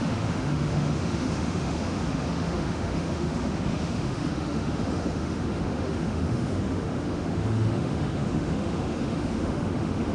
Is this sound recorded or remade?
remade